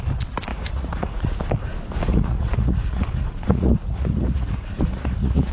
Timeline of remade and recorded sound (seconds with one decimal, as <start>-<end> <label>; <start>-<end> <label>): 0.0-0.5 recorded; 0.5-1.3 remade; 1.3-2.1 recorded; 2.1-5.5 remade